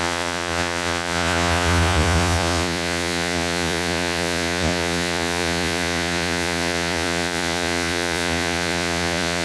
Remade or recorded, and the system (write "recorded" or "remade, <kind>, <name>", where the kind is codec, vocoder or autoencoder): remade, vocoder, Vocos